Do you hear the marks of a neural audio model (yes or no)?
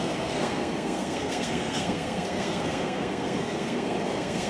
yes